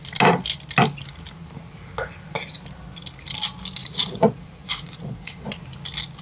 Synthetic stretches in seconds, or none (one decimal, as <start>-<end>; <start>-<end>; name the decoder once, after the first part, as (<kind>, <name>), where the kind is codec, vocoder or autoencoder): 3.8-5.5 (vocoder, Vocos)